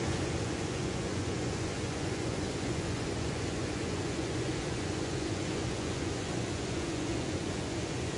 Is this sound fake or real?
fake